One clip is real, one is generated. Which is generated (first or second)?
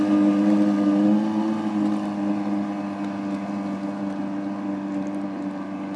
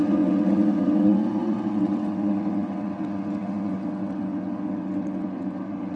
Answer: second